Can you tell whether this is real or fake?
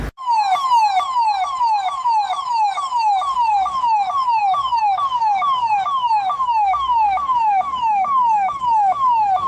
fake